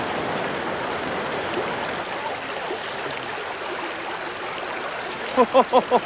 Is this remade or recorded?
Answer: recorded